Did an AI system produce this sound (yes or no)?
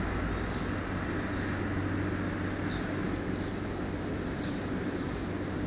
no